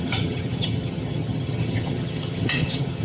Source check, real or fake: fake